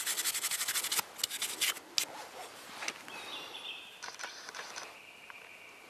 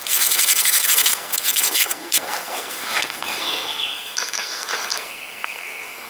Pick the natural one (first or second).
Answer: first